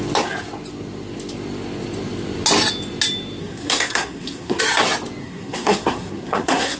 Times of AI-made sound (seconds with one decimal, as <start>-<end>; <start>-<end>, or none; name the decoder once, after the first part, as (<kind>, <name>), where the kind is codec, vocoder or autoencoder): 3.4-4.6 (codec, SNAC); 5.2-6.8